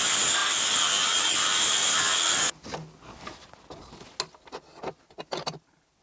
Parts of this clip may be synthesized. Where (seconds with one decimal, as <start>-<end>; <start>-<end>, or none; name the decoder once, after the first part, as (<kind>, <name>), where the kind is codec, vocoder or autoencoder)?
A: none